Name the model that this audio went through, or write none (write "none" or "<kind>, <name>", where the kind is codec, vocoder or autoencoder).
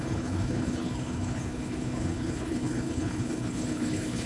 codec, HILCodec